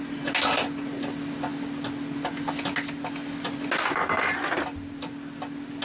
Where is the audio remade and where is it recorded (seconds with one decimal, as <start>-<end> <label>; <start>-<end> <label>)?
0.0-5.8 recorded